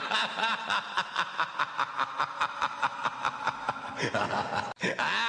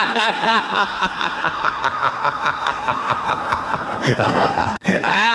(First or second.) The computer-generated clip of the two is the second